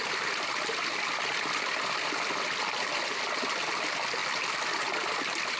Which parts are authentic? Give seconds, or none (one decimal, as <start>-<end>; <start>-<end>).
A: 0.0-5.6